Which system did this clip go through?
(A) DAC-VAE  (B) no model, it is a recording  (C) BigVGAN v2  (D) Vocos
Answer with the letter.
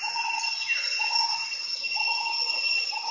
B